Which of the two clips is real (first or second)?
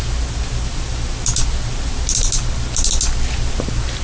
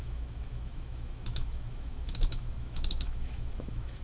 first